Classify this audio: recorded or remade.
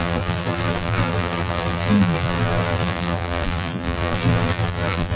remade